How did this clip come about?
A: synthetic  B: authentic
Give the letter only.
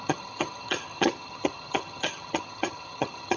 A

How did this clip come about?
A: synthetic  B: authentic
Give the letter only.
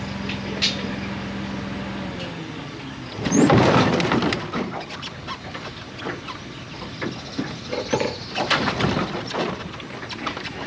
B